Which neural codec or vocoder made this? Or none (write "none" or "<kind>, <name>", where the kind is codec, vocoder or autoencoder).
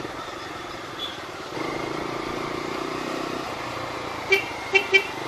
vocoder, BigVGAN v2